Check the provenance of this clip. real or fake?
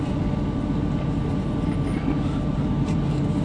real